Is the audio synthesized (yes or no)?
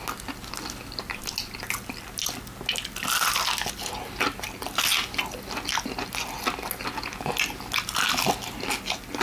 no